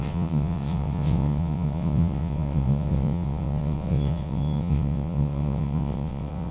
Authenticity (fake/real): fake